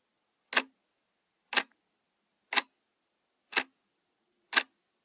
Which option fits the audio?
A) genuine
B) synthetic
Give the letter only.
A